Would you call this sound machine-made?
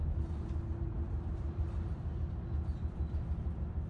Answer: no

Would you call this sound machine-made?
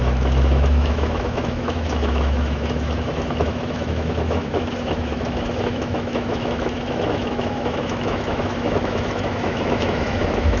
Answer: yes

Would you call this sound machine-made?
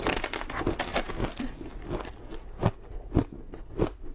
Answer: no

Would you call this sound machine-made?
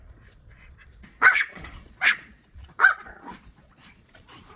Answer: yes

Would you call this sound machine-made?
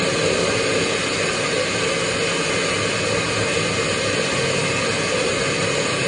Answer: no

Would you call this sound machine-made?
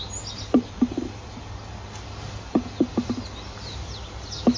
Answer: no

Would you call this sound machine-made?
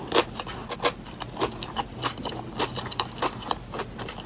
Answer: no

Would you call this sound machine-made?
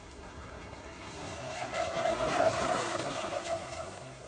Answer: yes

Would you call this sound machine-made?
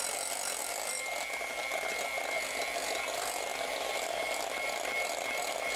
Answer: no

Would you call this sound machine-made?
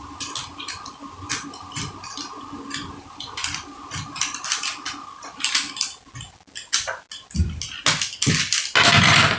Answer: no